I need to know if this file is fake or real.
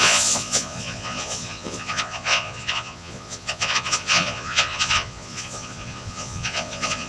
fake